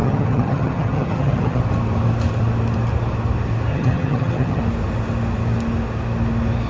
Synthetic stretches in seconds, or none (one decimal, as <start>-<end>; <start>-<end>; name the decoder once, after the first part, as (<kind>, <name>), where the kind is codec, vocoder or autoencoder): 0.0-1.6 (vocoder, HiFi-GAN); 3.7-4.6